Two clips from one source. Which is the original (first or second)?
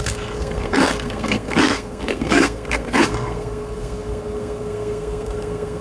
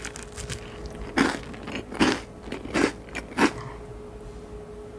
second